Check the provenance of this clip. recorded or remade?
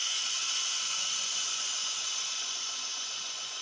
remade